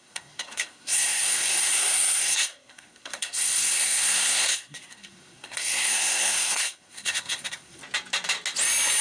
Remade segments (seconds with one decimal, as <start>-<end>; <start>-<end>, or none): 0.0-7.8